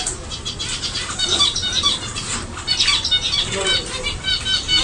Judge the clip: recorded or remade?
recorded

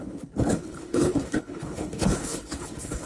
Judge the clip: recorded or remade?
remade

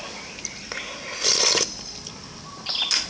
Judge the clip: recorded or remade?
recorded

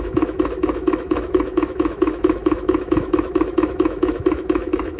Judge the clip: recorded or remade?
remade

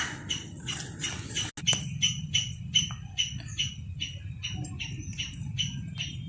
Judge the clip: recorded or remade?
recorded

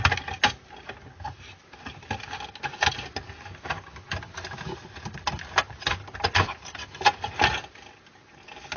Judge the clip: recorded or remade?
recorded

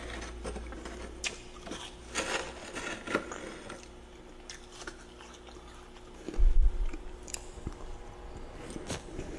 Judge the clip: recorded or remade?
recorded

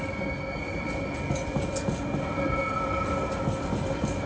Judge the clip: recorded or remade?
recorded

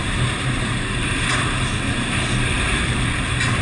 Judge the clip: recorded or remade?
remade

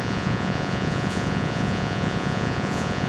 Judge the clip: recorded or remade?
remade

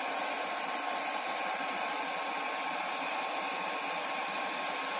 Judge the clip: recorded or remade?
recorded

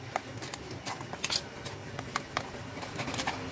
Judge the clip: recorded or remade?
recorded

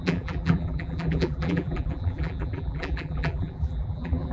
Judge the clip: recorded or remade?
remade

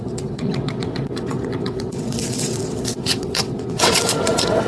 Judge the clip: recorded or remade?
remade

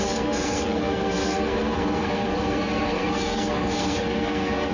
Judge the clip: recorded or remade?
remade